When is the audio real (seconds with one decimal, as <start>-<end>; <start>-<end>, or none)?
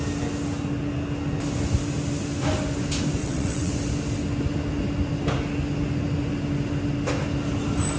0.0-3.2; 3.7-8.0